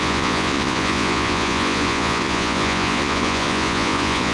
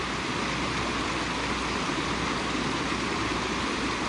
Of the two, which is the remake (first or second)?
first